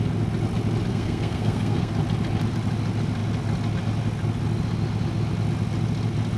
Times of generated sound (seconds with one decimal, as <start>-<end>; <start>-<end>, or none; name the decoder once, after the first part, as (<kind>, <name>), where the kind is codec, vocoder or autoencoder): 0.9-1.9 (codec, SNAC)

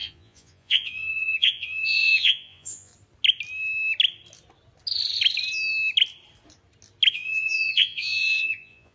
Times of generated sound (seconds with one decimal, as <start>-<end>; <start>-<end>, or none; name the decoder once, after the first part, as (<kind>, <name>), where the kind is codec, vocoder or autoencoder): 0.0-2.9 (vocoder, Vocos); 7.1-8.9

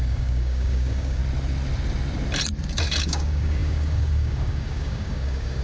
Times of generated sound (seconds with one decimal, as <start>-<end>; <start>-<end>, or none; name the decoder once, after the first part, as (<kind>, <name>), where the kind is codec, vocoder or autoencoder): 0.0-1.2 (codec, DAC); 3.0-5.6

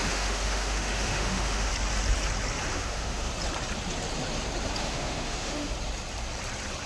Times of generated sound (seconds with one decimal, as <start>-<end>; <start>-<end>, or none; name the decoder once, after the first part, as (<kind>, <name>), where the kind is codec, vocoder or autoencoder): 0.0-1.7 (autoencoder, DAC-VAE); 2.7-3.3; 4.8-5.7

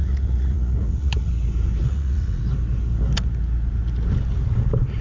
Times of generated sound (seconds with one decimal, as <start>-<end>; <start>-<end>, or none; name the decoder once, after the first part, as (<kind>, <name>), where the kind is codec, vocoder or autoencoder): 0.0-1.3 (vocoder, Vocos); 1.8-2.4